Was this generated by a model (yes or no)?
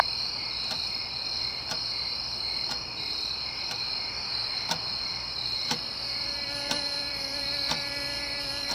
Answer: yes